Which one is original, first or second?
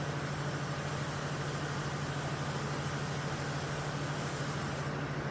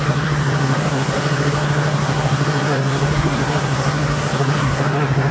first